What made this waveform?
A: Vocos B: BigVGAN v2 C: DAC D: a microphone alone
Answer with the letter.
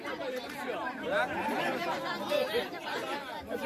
D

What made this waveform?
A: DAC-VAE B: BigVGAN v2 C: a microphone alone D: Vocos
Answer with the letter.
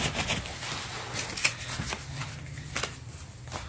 C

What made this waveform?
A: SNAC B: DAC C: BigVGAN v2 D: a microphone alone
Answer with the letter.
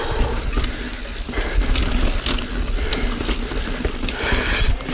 D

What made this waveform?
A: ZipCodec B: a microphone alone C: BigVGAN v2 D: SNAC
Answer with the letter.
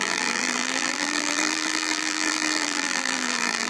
C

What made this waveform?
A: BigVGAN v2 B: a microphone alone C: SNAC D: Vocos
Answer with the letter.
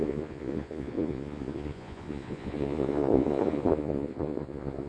D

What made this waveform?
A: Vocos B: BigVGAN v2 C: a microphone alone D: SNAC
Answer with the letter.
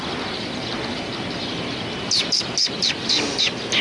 C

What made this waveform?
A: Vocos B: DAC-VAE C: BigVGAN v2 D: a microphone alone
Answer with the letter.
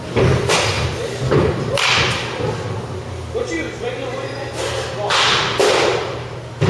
D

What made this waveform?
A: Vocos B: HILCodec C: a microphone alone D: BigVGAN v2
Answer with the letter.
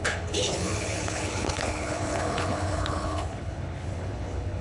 B